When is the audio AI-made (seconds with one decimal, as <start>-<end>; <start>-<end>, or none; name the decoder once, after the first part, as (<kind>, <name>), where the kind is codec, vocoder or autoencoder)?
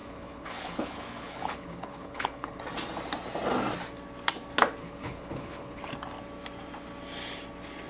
0.0-2.6 (codec, HILCodec); 4.8-5.8